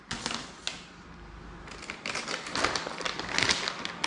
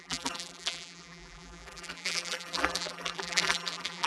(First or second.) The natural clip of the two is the first